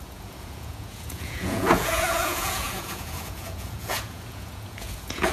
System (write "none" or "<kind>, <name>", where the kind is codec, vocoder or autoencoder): vocoder, Vocos